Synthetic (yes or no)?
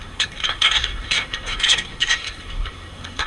yes